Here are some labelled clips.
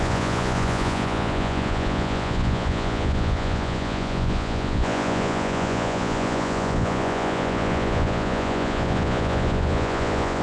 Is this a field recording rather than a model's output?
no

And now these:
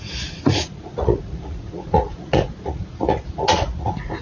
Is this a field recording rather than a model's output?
no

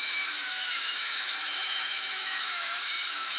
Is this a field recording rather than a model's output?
no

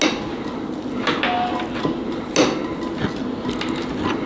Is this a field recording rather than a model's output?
yes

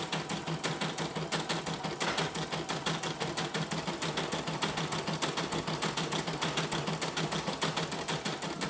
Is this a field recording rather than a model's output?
yes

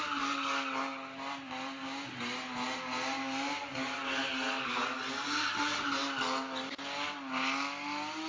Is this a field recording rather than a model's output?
yes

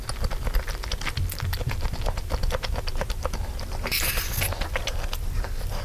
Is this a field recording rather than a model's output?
yes